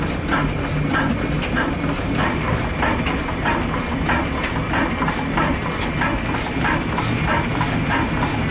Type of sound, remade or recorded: recorded